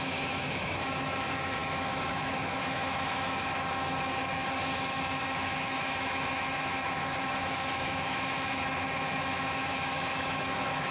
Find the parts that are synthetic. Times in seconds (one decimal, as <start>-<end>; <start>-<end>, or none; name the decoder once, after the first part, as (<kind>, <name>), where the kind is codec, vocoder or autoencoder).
0.0-10.9 (autoencoder, DAC-VAE)